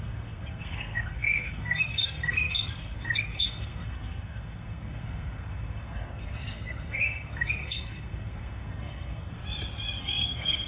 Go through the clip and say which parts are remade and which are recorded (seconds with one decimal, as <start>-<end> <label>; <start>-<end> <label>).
0.0-9.4 remade; 9.4-10.0 recorded; 10.0-10.7 remade